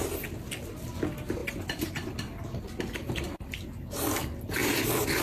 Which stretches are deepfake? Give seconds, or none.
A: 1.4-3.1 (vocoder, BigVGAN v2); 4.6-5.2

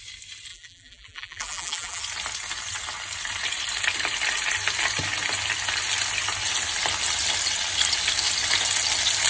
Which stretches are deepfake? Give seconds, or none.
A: 0.5-2.0 (vocoder, BigVGAN v2)

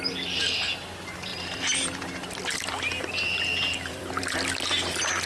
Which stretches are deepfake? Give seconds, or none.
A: 1.3-4.5 (vocoder, BigVGAN v2)

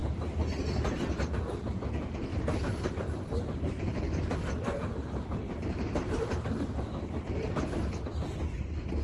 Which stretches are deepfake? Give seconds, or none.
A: 0.0-1.4 (vocoder, BigVGAN v2); 2.3-7.5

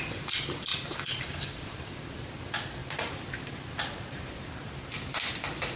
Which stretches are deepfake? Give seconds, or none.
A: 0.7-1.2 (vocoder, BigVGAN v2)

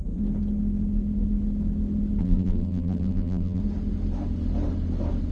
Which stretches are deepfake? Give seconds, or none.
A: 2.2-3.6 (vocoder, BigVGAN v2)

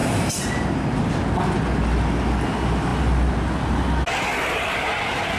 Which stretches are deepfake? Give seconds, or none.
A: 0.0-1.1 (vocoder, BigVGAN v2)